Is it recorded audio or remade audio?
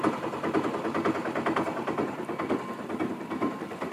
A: recorded